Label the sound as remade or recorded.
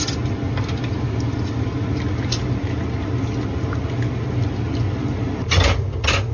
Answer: recorded